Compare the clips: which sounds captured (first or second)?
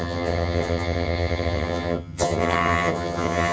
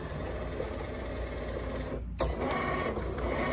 second